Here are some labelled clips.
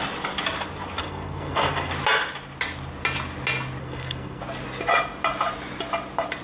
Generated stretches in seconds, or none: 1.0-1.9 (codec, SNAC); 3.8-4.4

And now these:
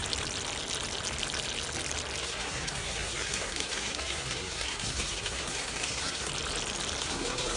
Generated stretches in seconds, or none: 2.2-6.3 (codec, SNAC); 7.0-7.6

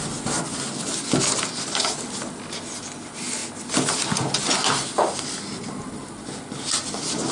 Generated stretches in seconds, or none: none